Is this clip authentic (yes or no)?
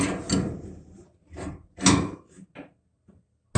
yes